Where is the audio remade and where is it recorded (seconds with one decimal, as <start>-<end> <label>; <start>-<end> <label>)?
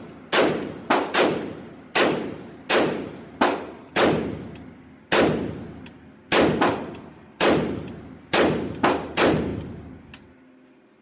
0.0-11.0 recorded